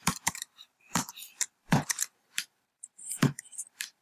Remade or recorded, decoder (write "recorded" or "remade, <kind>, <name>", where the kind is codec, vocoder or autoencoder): remade, vocoder, BigVGAN v2